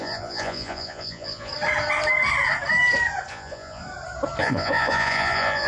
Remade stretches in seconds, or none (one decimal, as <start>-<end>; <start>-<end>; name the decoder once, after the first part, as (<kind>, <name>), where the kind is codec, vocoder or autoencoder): 0.0-1.5 (vocoder, Vocos); 3.3-3.8; 4.4-5.7